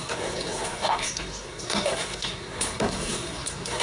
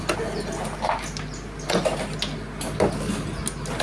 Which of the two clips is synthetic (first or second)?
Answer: first